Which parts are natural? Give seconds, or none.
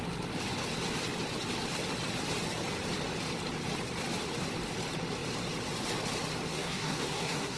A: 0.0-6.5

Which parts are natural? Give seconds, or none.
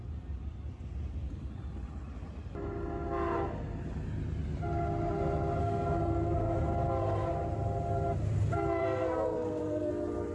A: 0.0-5.6; 6.6-8.8; 9.9-10.3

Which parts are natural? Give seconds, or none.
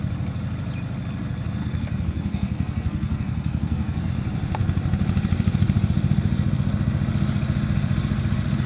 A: 0.0-1.6; 4.1-8.7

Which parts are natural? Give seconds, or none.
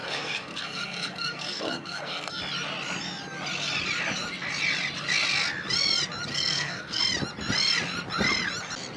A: 2.4-6.3; 7.0-9.0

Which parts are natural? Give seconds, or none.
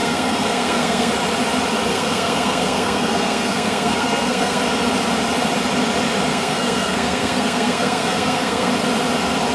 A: 1.1-1.9; 4.6-6.3; 8.7-9.5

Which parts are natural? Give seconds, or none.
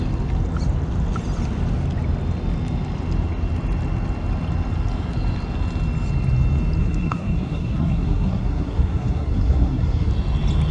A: 0.0-6.8; 10.1-10.7